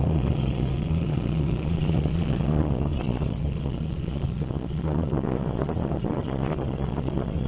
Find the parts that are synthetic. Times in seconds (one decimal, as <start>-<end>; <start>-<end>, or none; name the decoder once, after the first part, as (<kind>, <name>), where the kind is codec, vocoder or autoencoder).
0.0-7.5 (vocoder, Vocos)